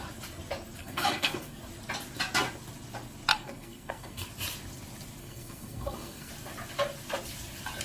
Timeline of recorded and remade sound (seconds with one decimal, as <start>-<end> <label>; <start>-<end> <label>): 0.0-0.8 recorded; 0.8-1.6 remade; 1.6-3.3 recorded; 3.3-4.3 remade; 4.3-5.2 recorded; 5.2-6.3 remade; 6.3-7.8 recorded